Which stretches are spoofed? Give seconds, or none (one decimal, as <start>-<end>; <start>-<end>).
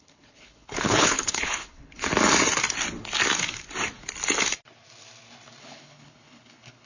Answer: 0.0-2.1; 5.6-6.9